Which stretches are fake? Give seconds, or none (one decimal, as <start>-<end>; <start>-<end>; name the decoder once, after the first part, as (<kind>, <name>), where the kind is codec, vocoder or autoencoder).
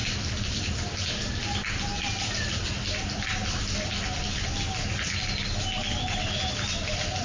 none